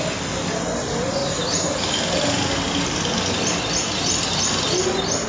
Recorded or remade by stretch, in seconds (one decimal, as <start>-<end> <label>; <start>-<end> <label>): 0.0-5.3 recorded